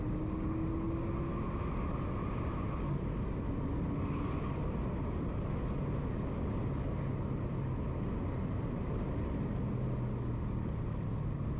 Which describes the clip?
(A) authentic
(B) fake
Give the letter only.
A